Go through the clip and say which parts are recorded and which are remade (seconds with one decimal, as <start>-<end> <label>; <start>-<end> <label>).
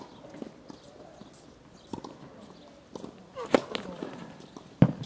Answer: 0.0-5.1 recorded